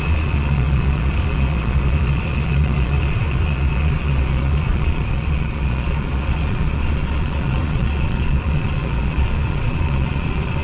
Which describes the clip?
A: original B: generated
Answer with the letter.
B